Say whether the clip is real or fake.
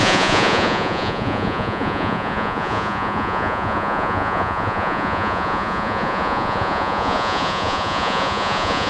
fake